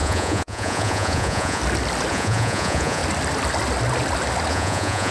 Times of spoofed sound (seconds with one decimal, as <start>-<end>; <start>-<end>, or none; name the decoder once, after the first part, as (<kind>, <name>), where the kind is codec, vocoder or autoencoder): 0.0-1.6 (vocoder, Vocos); 2.1-3.0; 4.5-5.1